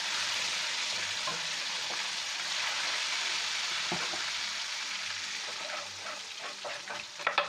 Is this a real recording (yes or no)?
no